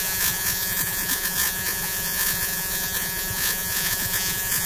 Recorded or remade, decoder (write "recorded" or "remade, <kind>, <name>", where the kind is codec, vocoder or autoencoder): remade, vocoder, Vocos